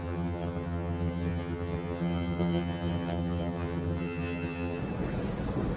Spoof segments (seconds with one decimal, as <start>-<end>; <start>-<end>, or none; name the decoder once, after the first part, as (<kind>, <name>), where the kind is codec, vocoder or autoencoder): 0.0-4.8 (vocoder, HiFi-GAN)